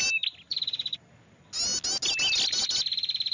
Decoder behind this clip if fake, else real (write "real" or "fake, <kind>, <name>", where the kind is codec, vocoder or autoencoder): real